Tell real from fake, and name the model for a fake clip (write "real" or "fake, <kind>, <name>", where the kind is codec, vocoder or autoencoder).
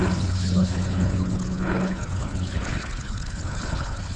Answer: fake, codec, HILCodec